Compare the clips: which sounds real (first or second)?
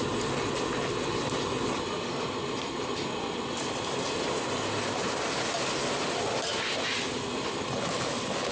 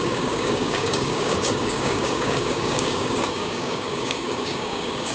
first